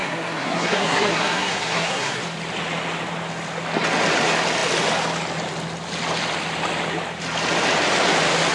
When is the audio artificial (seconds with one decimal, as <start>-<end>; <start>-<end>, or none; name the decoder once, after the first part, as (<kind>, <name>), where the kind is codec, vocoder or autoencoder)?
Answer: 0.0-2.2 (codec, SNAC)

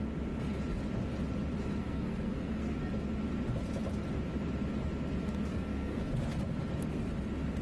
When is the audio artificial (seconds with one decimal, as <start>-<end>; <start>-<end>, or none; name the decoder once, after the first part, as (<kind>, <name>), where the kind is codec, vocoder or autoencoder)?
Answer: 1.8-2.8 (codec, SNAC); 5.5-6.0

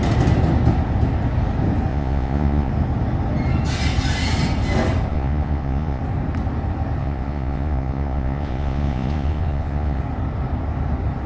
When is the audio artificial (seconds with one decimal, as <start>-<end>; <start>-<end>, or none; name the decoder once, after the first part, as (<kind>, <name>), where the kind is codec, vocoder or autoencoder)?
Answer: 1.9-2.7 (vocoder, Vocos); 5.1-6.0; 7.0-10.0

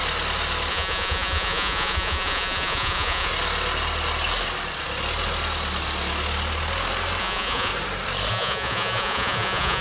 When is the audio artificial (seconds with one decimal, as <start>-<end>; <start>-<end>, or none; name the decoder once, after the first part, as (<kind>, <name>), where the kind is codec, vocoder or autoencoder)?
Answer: 0.7-3.3 (vocoder, Vocos); 7.2-7.7; 8.3-9.8

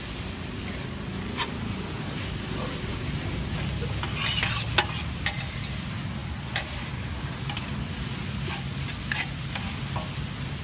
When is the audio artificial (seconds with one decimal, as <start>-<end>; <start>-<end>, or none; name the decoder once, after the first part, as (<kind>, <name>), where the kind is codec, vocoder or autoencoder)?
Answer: none

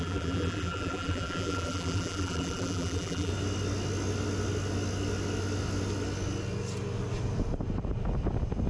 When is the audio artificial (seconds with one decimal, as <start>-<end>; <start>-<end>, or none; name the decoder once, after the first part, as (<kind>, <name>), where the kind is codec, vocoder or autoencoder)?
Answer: 0.0-3.3 (vocoder, BigVGAN v2)

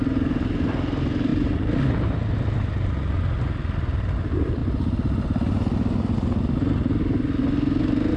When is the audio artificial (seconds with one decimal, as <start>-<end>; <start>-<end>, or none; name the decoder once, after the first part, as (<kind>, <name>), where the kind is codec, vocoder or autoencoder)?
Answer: none